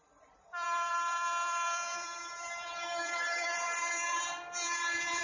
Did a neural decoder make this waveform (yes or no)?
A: yes